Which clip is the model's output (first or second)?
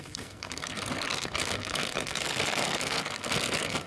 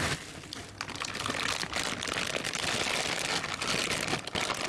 first